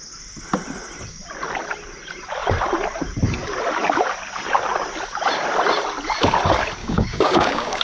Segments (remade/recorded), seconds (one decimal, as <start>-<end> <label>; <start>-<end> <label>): 0.0-6.8 recorded; 6.8-7.8 remade